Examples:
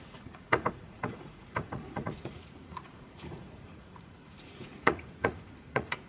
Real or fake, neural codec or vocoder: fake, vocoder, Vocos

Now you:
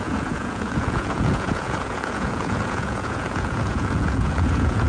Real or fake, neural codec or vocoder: fake, vocoder, Vocos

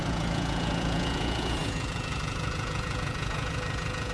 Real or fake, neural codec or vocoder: fake, vocoder, Vocos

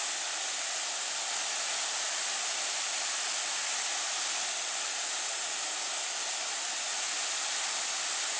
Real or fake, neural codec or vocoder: real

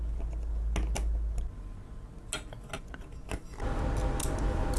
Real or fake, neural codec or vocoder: real